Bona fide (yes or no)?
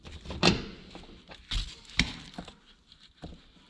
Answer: yes